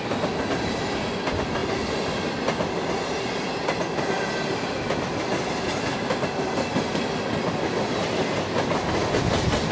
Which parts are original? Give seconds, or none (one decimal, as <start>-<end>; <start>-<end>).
0.0-9.7